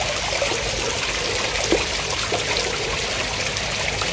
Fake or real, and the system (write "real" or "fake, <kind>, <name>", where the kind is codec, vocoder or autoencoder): real